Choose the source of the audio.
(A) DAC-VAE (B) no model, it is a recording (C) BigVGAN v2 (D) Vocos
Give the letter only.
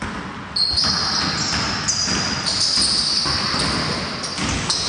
B